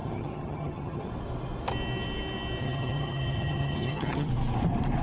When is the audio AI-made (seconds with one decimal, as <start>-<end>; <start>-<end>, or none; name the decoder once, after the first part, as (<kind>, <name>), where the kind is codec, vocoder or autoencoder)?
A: 0.0-1.1 (vocoder, HiFi-GAN); 2.6-4.3